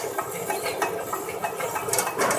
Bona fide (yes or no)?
yes